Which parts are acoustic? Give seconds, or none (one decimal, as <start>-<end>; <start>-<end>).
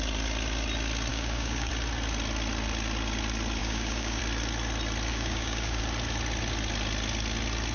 0.0-1.1; 1.7-3.6; 4.2-5.1; 5.8-7.7